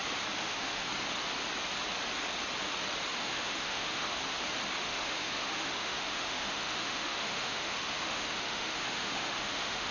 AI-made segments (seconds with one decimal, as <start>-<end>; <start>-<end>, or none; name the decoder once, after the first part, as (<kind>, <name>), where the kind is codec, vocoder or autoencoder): 0.4-0.9 (autoencoder, DAC-VAE); 3.1-4.2; 4.8-9.9

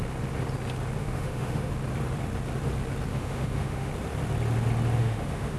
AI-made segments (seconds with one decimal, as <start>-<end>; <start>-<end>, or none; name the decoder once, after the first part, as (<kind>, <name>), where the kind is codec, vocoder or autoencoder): 1.0-1.7 (autoencoder, DAC-VAE); 3.1-3.9; 5.0-5.6

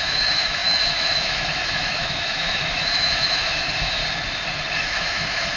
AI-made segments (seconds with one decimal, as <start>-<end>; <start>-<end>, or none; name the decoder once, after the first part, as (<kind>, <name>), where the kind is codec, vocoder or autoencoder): 0.0-4.0 (autoencoder, DAC-VAE); 4.8-5.6

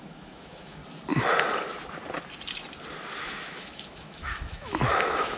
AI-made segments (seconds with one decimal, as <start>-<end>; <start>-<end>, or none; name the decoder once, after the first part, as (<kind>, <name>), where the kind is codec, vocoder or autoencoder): 0.0-0.8 (autoencoder, DAC-VAE); 3.2-5.4

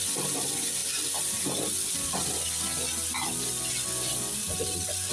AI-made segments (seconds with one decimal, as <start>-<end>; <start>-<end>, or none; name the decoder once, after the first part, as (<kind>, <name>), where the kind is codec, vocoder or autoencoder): none

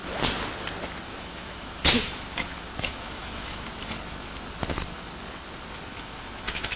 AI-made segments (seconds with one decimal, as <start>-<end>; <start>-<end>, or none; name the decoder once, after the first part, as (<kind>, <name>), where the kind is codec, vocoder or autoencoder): 1.1-3.7 (autoencoder, DAC-VAE); 5.9-6.8

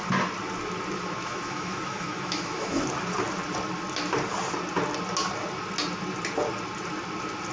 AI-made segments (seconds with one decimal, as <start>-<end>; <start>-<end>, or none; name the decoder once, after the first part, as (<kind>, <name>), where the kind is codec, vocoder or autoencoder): 1.2-2.8 (autoencoder, DAC-VAE)

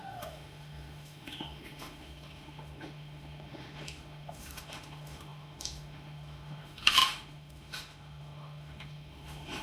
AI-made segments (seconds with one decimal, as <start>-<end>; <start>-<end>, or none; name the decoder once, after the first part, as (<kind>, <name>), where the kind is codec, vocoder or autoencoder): 0.0-9.6 (autoencoder, DAC-VAE)